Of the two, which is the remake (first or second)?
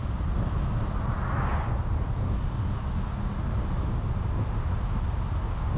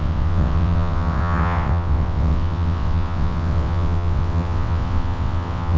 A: second